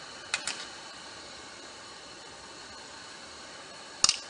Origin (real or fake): real